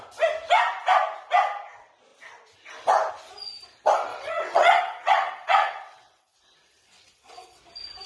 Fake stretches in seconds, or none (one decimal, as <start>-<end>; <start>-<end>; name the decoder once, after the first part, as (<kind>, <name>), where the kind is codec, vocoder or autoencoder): 4.1-7.6 (vocoder, WaveNeXt)